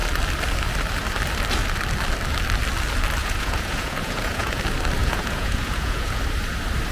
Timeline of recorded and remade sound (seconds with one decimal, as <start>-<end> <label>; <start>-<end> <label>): 0.0-3.2 recorded; 3.2-4.6 remade; 4.6-5.0 recorded; 5.0-6.2 remade; 6.2-6.9 recorded